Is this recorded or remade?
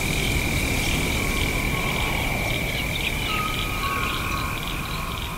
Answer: recorded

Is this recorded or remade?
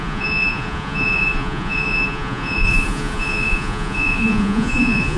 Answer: remade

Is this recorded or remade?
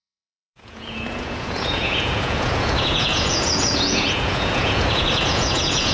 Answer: remade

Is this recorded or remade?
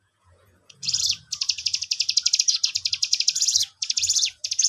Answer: remade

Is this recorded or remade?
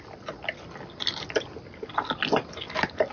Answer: recorded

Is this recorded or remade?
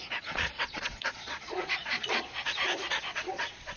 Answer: remade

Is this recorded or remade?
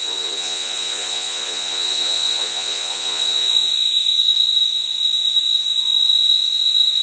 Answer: remade